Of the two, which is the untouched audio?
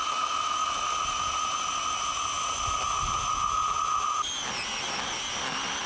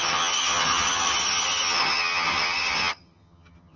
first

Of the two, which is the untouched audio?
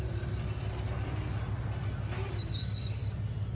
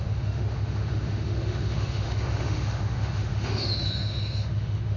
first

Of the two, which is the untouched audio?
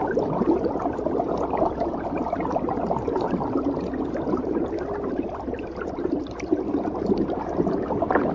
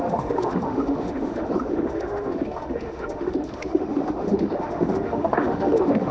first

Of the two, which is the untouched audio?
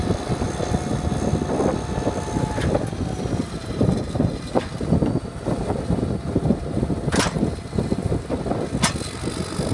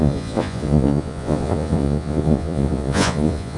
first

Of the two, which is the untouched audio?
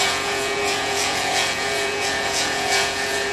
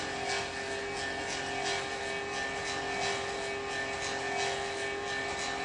second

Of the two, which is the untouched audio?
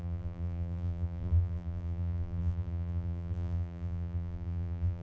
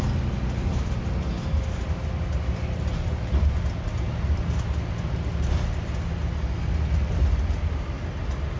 second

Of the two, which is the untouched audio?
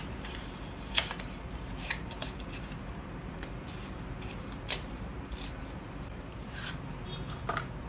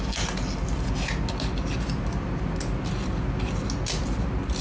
second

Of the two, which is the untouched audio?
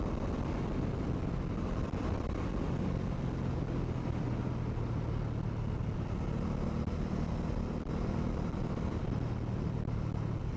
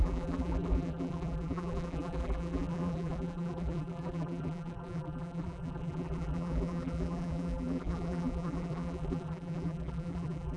first